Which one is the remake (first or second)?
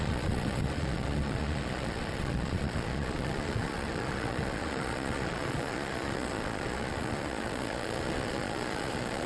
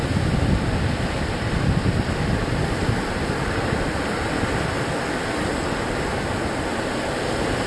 first